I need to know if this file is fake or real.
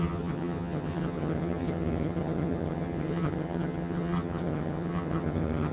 fake